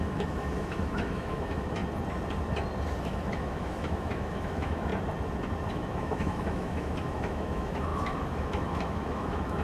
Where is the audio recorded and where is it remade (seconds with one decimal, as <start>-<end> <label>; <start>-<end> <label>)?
0.0-1.8 remade; 1.8-3.0 recorded; 3.0-4.9 remade; 4.9-5.7 recorded; 5.7-9.6 remade